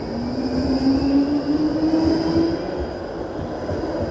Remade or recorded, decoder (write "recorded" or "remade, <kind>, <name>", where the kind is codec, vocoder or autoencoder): recorded